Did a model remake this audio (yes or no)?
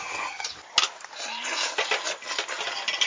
no